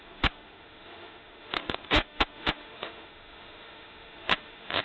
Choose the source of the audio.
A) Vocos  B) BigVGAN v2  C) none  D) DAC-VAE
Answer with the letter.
D